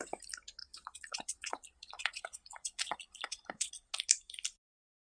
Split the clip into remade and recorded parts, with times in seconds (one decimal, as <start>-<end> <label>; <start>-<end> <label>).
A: 0.0-0.6 recorded; 0.6-3.7 remade; 3.7-5.1 recorded